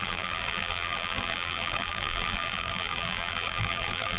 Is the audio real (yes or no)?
no